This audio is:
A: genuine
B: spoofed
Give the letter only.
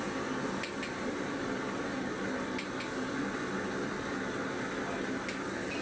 A